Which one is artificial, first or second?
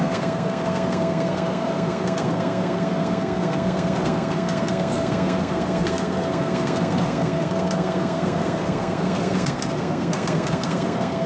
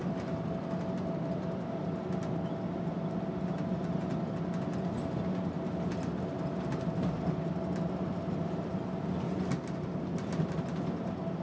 first